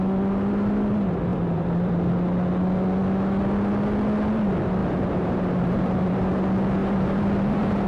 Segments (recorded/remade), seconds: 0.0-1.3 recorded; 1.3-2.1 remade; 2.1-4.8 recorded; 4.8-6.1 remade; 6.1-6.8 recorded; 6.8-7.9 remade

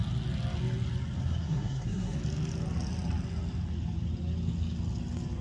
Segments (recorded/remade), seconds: 0.0-1.2 recorded; 1.2-2.2 remade; 2.2-5.4 recorded

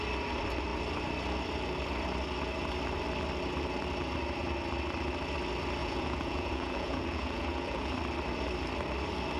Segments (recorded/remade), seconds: 0.0-5.8 recorded; 5.8-7.9 remade; 7.9-9.4 recorded